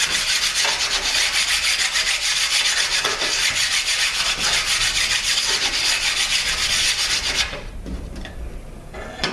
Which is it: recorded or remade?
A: recorded